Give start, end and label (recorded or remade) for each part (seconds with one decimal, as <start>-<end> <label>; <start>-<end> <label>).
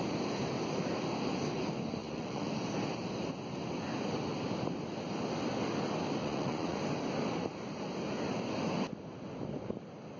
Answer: 0.0-2.0 recorded; 2.0-2.5 remade; 2.5-6.2 recorded; 6.2-6.8 remade; 6.8-10.2 recorded